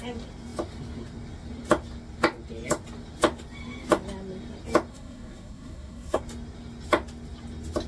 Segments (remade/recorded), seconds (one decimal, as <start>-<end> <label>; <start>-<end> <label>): 0.0-4.9 recorded; 4.9-6.2 remade; 6.2-7.9 recorded